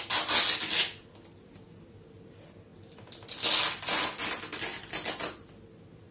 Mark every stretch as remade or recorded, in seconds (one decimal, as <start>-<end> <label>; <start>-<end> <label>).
0.0-6.1 recorded